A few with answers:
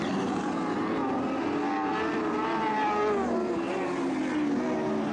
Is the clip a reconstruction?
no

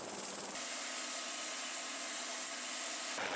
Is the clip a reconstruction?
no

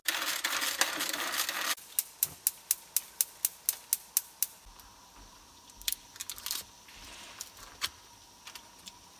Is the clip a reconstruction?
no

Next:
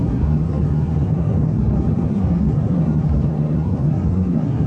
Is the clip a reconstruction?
yes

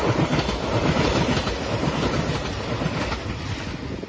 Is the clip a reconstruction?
no